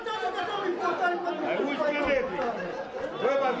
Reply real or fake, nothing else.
real